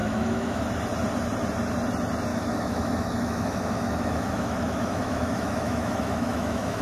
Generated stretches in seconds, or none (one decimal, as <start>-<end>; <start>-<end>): 0.0-0.6; 2.3-6.8